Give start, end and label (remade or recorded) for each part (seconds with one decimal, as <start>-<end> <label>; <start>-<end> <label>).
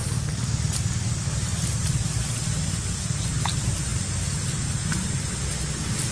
0.0-6.1 recorded